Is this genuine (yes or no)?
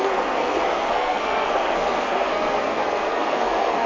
no